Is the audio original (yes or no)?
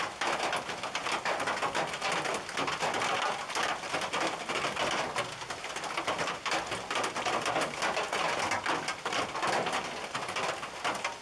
yes